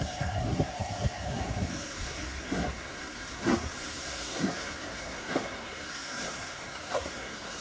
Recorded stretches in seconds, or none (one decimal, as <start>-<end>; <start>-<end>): none